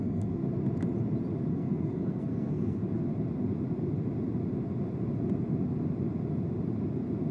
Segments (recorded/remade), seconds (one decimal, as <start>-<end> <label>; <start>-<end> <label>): 0.0-0.4 remade; 0.4-1.5 recorded; 1.5-2.8 remade; 2.8-7.3 recorded